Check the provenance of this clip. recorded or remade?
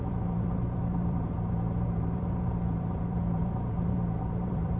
remade